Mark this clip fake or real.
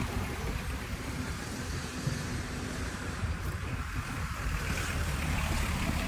fake